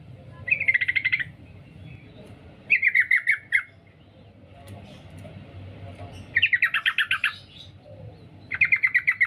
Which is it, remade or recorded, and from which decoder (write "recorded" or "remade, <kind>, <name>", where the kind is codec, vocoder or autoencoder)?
recorded